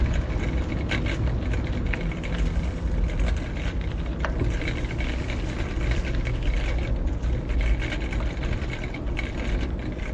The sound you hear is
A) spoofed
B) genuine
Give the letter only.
B